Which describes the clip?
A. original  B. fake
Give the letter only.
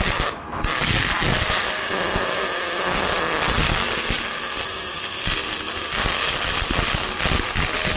A